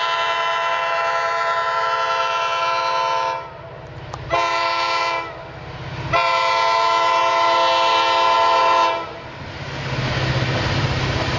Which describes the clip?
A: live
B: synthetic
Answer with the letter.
A